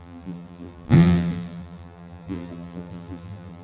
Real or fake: fake